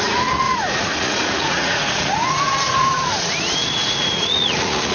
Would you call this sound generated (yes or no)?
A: yes